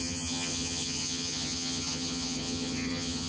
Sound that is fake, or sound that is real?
fake